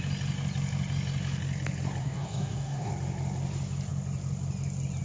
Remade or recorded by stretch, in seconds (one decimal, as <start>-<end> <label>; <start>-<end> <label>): 0.0-2.0 recorded; 2.0-2.9 remade; 2.9-5.0 recorded